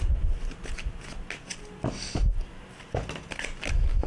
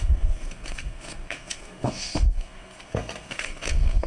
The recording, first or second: first